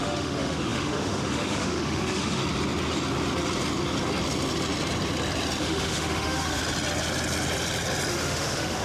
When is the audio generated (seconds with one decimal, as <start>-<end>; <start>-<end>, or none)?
0.0-2.4; 5.6-6.6; 8.1-8.8